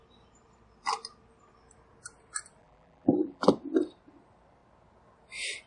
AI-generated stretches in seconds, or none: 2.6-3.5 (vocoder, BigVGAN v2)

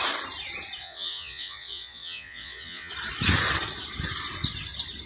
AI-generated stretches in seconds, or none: 0.8-2.9 (vocoder, Vocos)

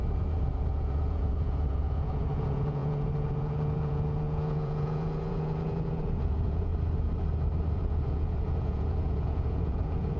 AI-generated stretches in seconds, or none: 0.0-6.7 (vocoder, Vocos); 7.8-10.2

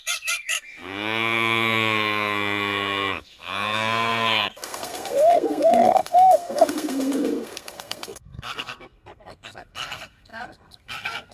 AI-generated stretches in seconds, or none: 0.0-11.3 (codec, SNAC)

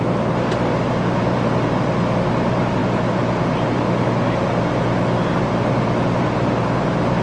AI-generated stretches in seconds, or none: none